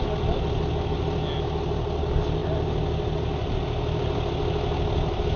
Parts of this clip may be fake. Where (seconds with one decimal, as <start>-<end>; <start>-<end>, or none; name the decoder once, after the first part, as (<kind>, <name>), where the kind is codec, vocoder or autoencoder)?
none